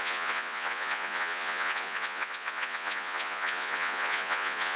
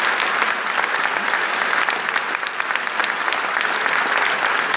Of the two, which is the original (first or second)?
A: second